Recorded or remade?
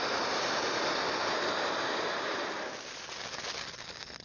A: recorded